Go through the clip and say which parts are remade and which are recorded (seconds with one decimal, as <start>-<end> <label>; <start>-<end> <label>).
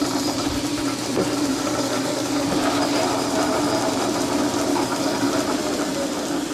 0.0-1.5 recorded; 1.5-2.4 remade; 2.4-4.7 recorded; 4.7-5.3 remade; 5.3-6.5 recorded